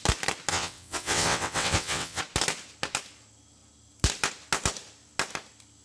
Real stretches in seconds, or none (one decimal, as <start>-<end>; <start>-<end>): 0.0-0.5; 2.2-5.8